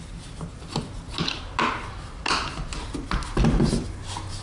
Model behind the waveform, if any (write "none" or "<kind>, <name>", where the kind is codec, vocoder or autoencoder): none